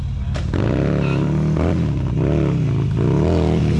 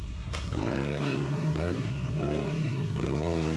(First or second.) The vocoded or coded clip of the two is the second